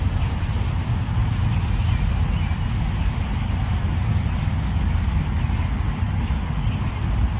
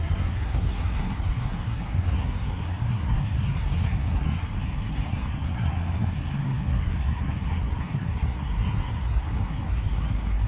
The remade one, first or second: second